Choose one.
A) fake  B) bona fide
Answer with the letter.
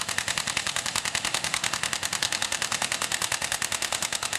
A